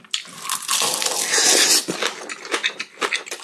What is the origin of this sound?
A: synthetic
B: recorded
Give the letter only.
B